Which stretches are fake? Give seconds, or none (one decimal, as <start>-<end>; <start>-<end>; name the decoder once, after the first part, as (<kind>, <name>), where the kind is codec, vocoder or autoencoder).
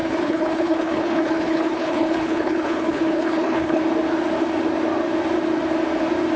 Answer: 0.0-3.8 (codec, HILCodec)